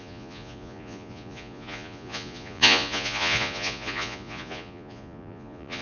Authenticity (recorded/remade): remade